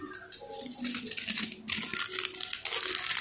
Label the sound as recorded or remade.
recorded